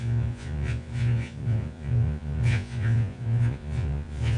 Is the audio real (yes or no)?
no